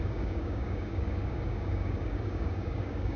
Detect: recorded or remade remade